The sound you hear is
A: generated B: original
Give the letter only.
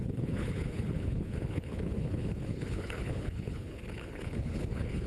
A